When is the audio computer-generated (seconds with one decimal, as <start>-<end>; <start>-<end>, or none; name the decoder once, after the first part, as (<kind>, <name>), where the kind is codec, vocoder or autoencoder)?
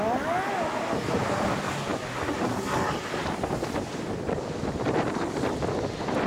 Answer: none